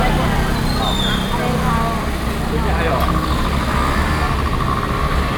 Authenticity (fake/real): real